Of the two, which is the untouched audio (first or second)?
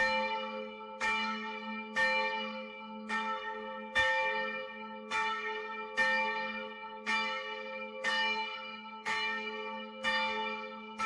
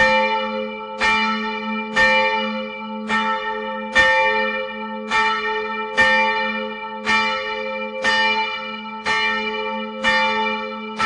second